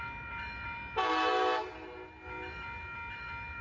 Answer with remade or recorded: recorded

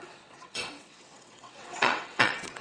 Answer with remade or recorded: remade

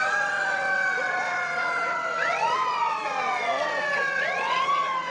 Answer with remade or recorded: remade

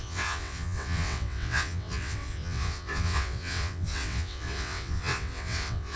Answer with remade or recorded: remade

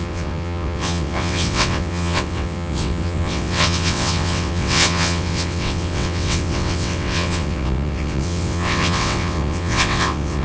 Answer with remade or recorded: remade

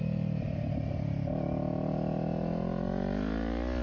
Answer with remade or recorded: recorded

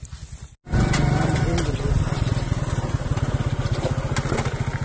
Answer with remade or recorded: recorded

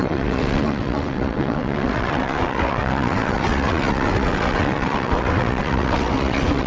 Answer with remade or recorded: remade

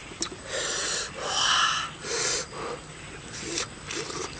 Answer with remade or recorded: recorded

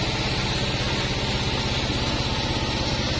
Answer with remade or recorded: recorded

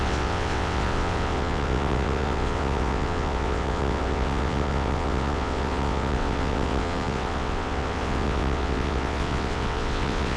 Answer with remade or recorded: remade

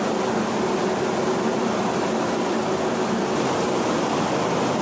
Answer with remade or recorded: recorded